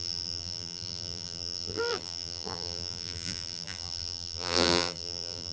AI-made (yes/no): yes